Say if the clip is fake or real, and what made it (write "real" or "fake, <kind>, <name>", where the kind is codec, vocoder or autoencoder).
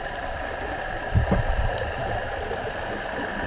fake, vocoder, BigVGAN v2